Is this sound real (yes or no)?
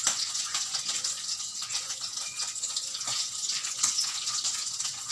no